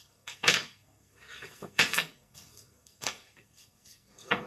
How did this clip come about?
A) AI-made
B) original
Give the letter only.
A